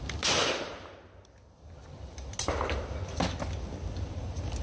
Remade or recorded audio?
recorded